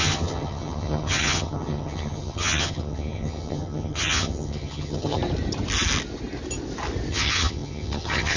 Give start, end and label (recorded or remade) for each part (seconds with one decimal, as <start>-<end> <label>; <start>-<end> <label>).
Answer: 0.0-5.2 remade; 5.2-7.1 recorded; 7.1-8.4 remade